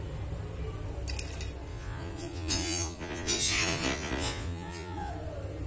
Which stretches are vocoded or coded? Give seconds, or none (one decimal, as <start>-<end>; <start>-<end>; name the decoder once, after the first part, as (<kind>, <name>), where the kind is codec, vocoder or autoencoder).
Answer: 1.7-5.1 (vocoder, Vocos)